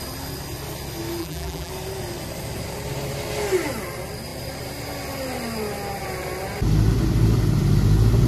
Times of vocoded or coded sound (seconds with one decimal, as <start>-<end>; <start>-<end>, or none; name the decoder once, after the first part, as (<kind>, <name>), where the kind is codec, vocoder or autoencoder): 1.2-1.7 (vocoder, BigVGAN v2)